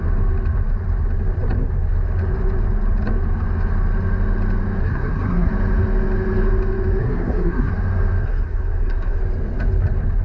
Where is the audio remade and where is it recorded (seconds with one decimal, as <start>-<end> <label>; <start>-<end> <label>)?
0.0-4.8 recorded; 4.8-5.5 remade; 5.5-7.0 recorded; 7.0-7.7 remade; 7.7-8.2 recorded; 8.2-9.2 remade; 9.2-10.2 recorded